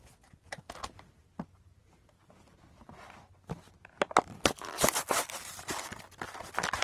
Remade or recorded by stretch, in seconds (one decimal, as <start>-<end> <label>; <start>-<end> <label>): 0.0-6.8 recorded